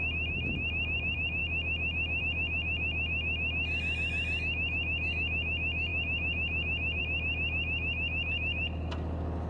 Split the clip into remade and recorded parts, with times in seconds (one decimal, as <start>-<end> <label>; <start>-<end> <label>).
0.0-9.5 recorded